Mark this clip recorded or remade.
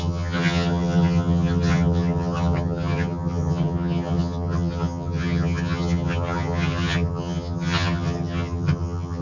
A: remade